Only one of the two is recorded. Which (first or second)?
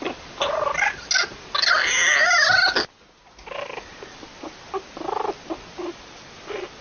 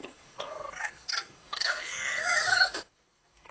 first